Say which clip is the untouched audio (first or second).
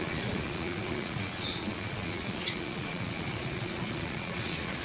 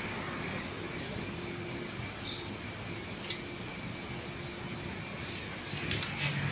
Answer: second